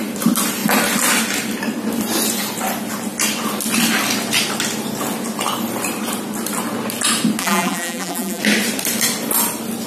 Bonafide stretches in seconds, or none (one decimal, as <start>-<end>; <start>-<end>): 0.0-7.4; 8.4-9.9